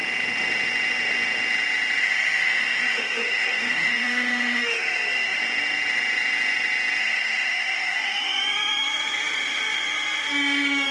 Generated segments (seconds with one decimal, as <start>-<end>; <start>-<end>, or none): 2.0-5.4; 7.0-10.9